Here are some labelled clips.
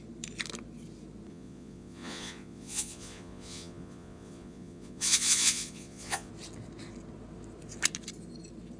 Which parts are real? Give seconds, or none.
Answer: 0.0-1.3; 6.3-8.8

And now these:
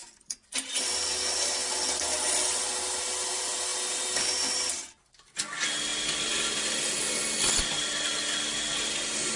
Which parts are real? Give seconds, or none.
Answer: 0.0-9.4

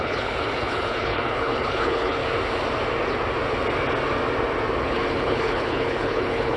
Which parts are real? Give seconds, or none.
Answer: 2.2-4.8